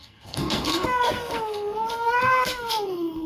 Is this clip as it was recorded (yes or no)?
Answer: no